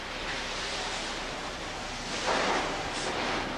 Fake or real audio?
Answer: real